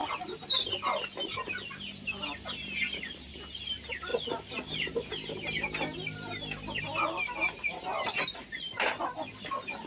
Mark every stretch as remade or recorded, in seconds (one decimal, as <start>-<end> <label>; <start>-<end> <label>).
0.0-9.9 recorded